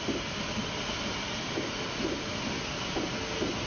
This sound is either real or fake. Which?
real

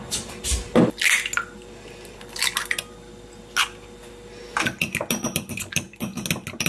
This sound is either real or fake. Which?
real